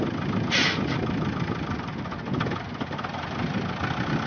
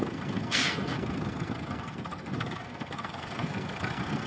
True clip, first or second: first